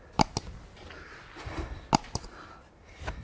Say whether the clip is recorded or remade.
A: recorded